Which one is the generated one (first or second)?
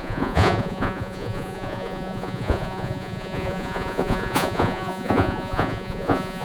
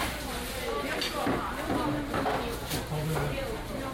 first